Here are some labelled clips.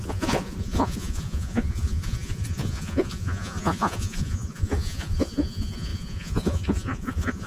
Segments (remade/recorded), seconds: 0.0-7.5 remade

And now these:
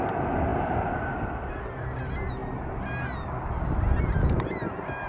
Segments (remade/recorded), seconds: 0.0-5.1 recorded

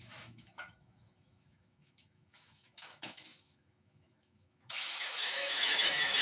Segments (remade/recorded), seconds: 0.0-6.2 remade